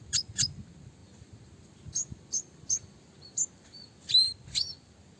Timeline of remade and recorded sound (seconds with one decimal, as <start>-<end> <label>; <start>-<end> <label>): 0.0-5.2 remade